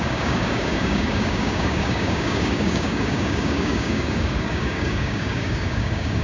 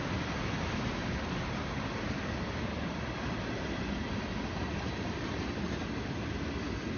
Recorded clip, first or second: second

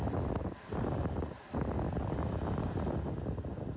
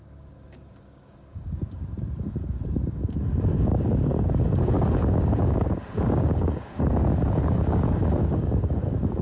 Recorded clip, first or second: first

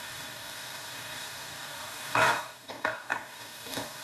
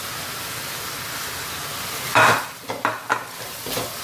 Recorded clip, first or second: second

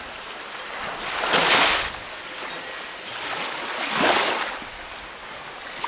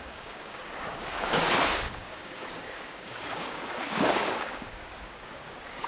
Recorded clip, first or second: first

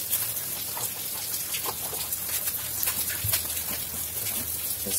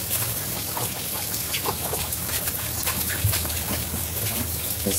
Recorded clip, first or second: first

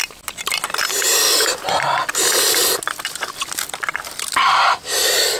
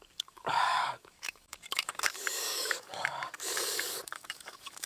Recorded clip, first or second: first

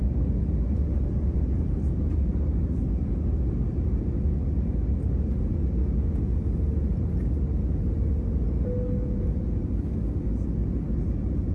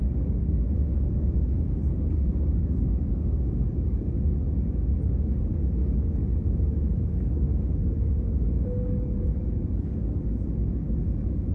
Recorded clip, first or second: first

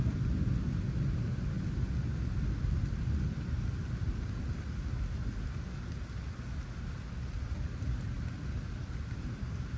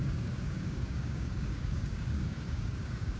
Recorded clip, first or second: first